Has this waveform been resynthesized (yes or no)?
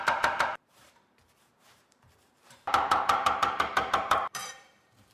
yes